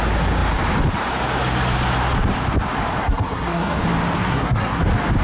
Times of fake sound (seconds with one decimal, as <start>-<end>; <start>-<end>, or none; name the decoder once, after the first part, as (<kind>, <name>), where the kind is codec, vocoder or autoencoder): 3.0-3.8 (codec, SNAC); 4.2-4.8

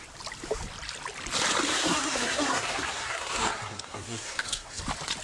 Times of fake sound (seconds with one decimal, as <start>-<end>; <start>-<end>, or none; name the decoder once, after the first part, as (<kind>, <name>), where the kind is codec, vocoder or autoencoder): 1.7-4.8 (codec, SNAC)